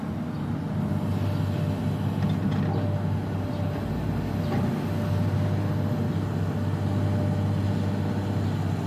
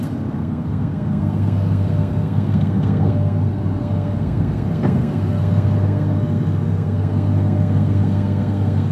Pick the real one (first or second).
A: first